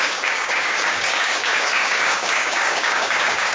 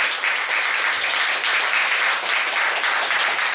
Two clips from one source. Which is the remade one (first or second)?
first